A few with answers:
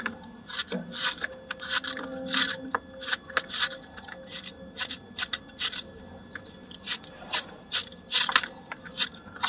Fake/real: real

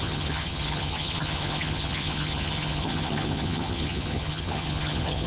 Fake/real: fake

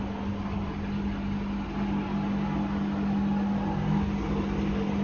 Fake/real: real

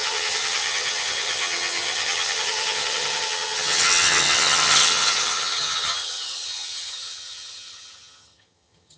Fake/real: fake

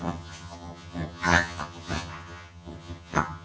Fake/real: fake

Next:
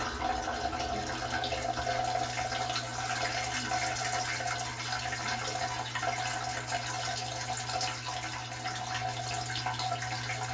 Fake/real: real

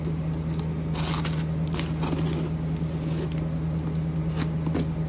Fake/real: real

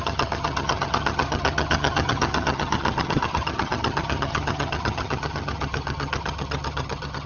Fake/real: fake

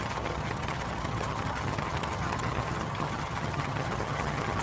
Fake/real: fake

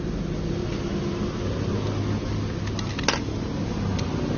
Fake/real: real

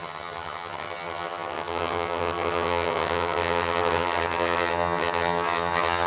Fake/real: fake